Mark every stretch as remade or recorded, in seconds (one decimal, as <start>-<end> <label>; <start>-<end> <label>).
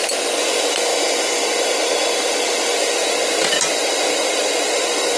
0.0-5.2 recorded